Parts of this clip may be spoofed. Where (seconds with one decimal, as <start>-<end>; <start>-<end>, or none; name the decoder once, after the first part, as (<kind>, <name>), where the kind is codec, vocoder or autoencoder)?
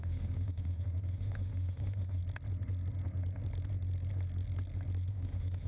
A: 0.0-2.2 (autoencoder, DAC-VAE); 5.1-5.7